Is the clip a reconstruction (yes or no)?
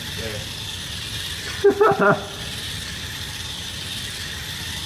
no